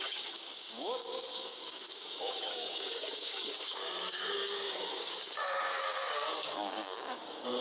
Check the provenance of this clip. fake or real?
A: fake